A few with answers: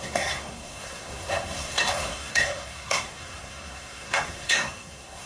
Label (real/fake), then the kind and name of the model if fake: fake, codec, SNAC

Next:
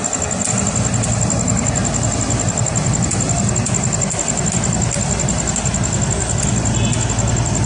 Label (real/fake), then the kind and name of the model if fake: real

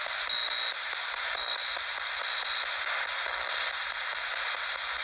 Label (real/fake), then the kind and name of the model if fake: real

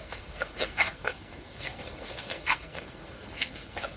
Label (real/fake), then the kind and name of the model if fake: fake, codec, SNAC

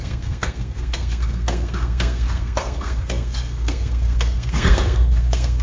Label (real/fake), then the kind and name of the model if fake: fake, codec, SNAC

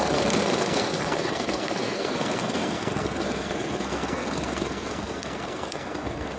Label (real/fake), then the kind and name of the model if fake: fake, codec, SNAC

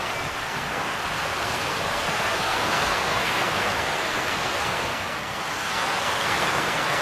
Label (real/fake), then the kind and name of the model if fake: fake, codec, SNAC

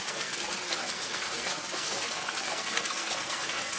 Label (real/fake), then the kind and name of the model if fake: fake, codec, SNAC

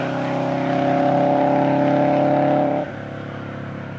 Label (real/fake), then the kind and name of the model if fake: real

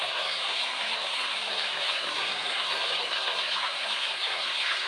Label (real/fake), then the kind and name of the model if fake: fake, codec, SNAC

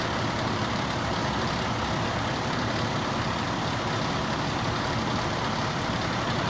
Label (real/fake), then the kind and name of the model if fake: real